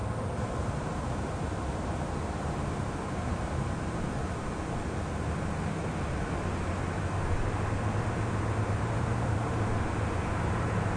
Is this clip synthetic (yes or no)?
yes